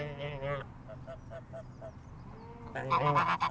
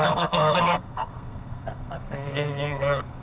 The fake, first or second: second